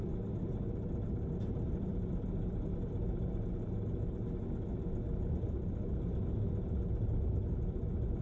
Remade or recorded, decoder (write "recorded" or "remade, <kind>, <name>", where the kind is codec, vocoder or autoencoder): recorded